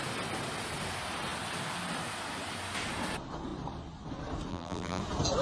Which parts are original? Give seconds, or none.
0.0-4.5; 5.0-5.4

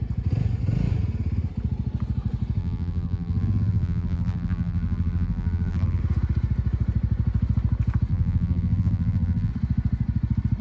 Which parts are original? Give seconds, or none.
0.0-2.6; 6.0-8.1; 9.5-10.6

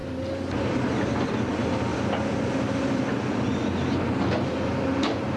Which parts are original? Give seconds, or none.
0.0-1.9; 3.0-5.4